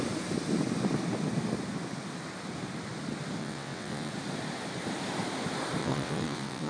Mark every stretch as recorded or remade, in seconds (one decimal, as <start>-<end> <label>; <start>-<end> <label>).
0.0-3.4 recorded; 3.4-4.1 remade; 4.1-5.8 recorded; 5.8-6.7 remade